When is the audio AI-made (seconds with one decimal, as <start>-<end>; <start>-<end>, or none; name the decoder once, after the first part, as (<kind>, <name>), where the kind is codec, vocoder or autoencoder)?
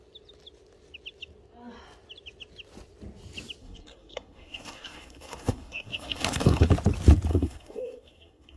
3.6-6.7 (codec, SNAC); 7.3-8.6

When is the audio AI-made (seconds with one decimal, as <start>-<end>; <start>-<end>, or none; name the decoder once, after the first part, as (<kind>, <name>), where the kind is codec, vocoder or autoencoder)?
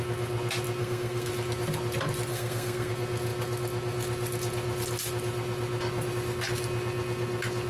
0.8-1.3 (codec, SNAC); 2.3-2.9